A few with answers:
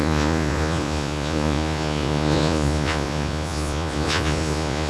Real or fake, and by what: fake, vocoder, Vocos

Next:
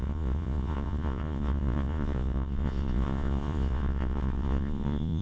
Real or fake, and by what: fake, vocoder, Vocos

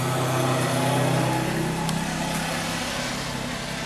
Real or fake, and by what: real